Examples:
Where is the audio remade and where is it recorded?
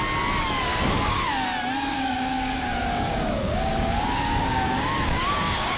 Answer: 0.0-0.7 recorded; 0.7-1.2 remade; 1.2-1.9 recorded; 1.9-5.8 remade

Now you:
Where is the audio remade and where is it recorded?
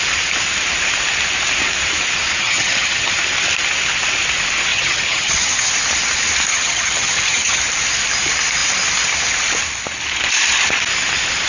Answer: 0.0-2.4 recorded; 2.4-3.1 remade; 3.1-4.7 recorded; 4.7-5.7 remade; 5.7-6.5 recorded; 6.5-7.6 remade; 7.6-11.5 recorded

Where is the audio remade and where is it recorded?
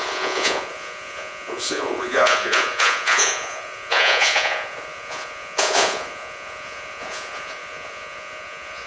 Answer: 0.0-8.9 remade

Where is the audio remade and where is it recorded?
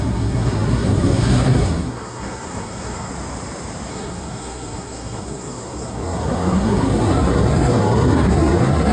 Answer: 0.0-3.1 remade; 3.1-3.9 recorded; 3.9-8.9 remade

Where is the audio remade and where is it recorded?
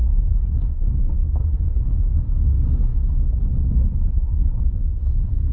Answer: 0.0-0.9 remade; 0.9-1.4 recorded; 1.4-2.0 remade; 2.0-4.1 recorded; 4.1-4.6 remade; 4.6-5.5 recorded